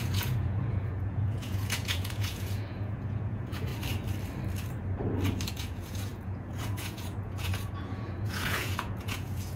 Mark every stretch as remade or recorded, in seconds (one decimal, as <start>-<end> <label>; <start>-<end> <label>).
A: 0.0-3.7 remade; 3.7-5.5 recorded; 5.5-9.6 remade